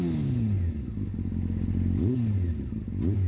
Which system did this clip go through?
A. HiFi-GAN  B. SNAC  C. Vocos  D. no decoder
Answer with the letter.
D